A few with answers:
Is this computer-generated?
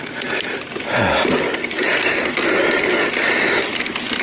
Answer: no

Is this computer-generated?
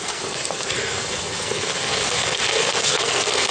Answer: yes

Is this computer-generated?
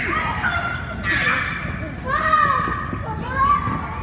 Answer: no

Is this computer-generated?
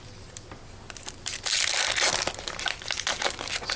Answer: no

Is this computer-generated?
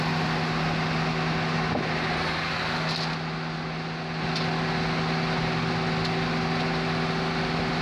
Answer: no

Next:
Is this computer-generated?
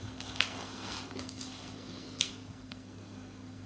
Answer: yes